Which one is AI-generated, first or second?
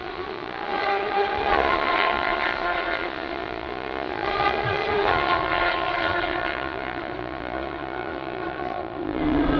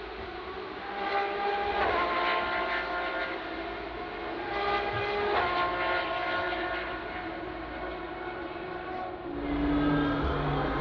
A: first